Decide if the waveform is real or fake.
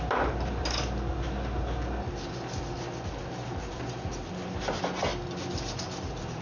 real